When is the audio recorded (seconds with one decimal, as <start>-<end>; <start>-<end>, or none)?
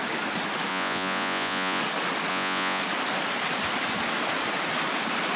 0.0-0.7; 1.8-2.3; 2.8-5.4